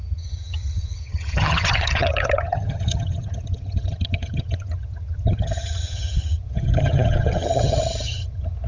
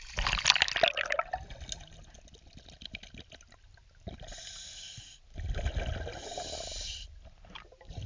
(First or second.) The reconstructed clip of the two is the first